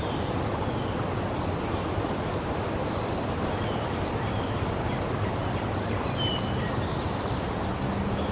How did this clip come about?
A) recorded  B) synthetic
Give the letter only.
A